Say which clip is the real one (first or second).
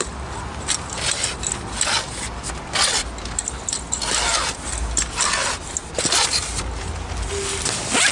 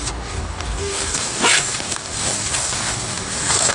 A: first